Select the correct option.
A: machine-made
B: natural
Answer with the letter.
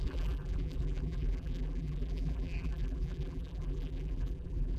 A